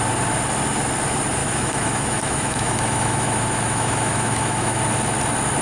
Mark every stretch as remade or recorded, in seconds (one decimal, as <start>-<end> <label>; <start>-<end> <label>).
0.0-1.4 recorded; 1.4-4.8 remade; 4.8-5.6 recorded